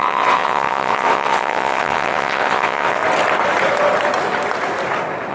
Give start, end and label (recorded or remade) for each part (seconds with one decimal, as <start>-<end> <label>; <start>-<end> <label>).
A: 0.0-3.0 remade; 3.0-5.3 recorded